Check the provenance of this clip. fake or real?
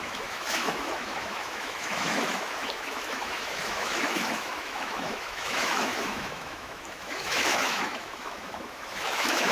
fake